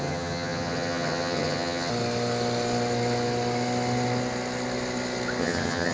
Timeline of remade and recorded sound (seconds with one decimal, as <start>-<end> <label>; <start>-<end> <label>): 0.0-1.9 remade; 1.9-5.4 recorded; 5.4-5.9 remade